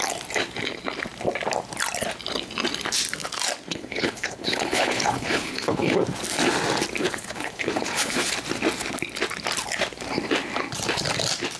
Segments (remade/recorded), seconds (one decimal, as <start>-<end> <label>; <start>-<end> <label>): 0.0-3.7 recorded; 3.7-6.0 remade; 6.0-7.0 recorded; 7.0-8.3 remade; 8.3-11.6 recorded